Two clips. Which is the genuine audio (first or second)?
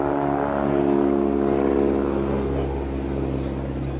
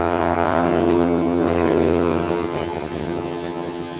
first